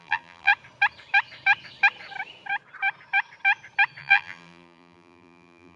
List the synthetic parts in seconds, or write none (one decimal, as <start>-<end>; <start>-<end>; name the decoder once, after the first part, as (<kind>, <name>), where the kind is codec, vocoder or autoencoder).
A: 0.0-0.5 (vocoder, BigVGAN v2); 4.0-5.8